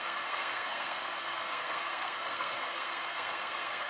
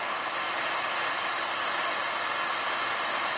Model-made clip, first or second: first